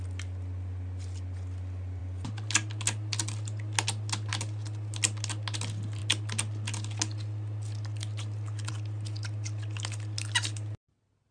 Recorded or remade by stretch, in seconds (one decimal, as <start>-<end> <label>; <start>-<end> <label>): 0.0-11.3 recorded